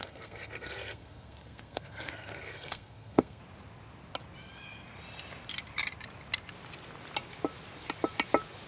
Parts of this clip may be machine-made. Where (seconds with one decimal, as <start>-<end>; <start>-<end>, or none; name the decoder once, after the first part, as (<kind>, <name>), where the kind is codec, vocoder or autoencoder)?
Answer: 0.0-3.4 (codec, SNAC)